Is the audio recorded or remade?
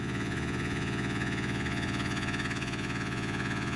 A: remade